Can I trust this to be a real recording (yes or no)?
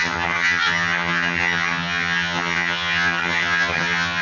no